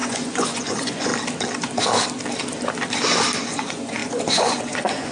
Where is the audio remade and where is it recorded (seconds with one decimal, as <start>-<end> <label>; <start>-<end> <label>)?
0.0-1.1 remade; 1.1-3.4 recorded; 3.4-5.1 remade